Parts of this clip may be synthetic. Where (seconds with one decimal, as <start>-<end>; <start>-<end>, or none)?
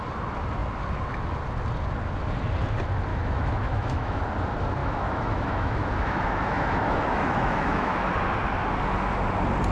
3.1-4.2; 4.8-8.0